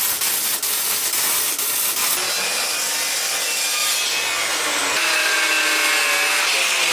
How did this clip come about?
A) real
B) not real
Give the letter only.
A